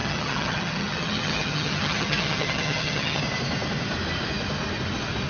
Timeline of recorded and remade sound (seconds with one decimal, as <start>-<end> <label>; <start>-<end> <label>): 0.0-3.2 remade; 3.2-5.3 recorded